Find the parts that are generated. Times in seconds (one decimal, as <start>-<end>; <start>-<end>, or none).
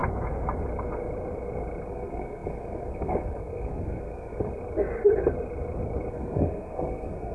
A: 1.9-4.5; 6.1-7.3